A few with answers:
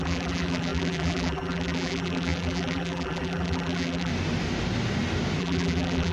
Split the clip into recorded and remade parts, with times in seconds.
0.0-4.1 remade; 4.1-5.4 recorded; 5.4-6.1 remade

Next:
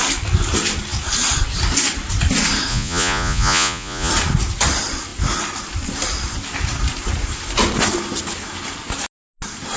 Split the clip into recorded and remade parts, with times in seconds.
0.0-2.7 recorded; 2.7-4.1 remade; 4.1-9.8 recorded

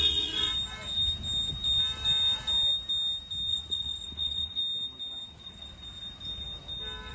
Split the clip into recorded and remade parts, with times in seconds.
0.0-0.5 remade; 0.5-3.5 recorded; 3.5-4.6 remade; 4.6-5.3 recorded; 5.3-5.7 remade; 5.7-7.1 recorded

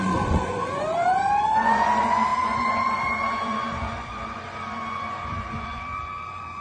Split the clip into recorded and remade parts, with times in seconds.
0.0-6.6 remade

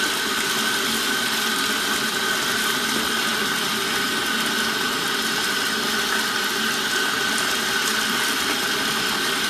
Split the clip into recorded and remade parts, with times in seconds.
0.0-9.5 recorded

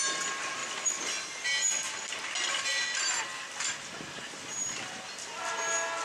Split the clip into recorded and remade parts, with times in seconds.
0.0-6.0 recorded

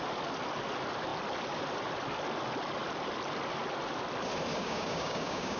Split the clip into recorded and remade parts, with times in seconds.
0.0-4.5 recorded; 4.5-5.6 remade

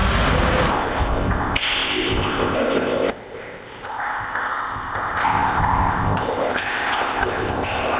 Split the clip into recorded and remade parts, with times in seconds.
0.0-0.7 recorded; 0.7-8.0 remade